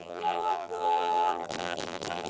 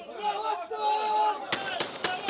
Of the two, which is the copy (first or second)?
first